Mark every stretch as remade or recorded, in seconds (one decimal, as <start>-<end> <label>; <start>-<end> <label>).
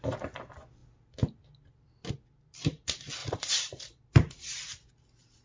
0.0-3.2 recorded; 3.2-4.1 remade; 4.1-5.4 recorded